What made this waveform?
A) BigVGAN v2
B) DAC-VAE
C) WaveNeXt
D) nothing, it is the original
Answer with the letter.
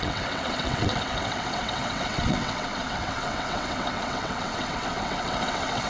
C